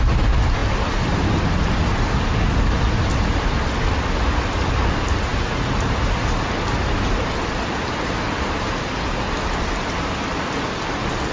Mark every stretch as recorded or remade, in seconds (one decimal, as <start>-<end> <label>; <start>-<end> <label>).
0.0-11.3 recorded